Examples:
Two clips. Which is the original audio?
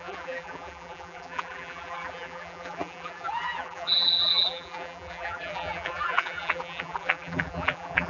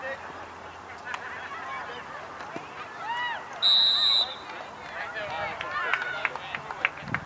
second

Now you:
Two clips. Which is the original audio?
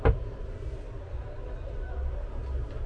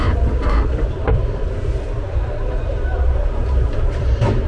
first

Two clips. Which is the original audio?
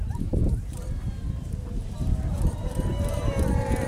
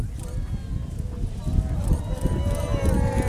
second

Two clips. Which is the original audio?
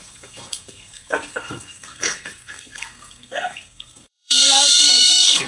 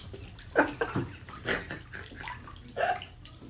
second